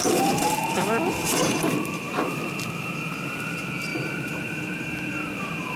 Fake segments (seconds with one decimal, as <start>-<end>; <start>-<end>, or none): 1.4-2.1; 3.9-5.8